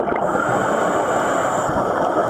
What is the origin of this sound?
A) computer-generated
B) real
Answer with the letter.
A